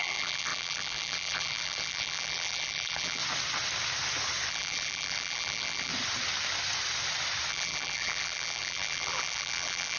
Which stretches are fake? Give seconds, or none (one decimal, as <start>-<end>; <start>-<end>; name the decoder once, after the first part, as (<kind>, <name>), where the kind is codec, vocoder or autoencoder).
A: 0.0-3.2 (vocoder, BigVGAN v2); 4.5-5.9; 7.5-10.0